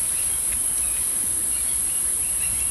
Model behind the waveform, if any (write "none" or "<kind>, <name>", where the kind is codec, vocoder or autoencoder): none